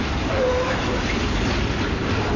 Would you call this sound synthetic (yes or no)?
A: no